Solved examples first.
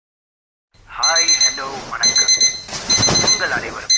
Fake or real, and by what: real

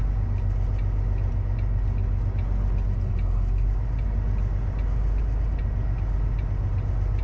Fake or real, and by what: real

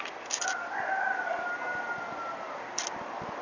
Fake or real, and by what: real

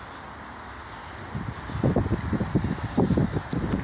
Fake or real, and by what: real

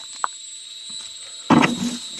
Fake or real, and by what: real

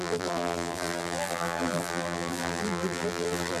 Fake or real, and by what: fake, vocoder, BigVGAN v2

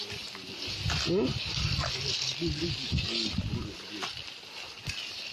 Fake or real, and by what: real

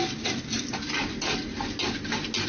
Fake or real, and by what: real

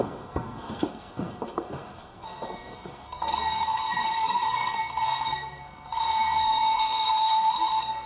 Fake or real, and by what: fake, codec, SNAC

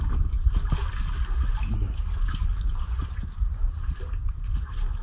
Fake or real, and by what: real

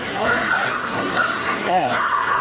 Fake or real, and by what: fake, codec, SNAC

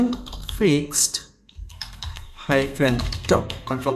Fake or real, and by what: fake, codec, SNAC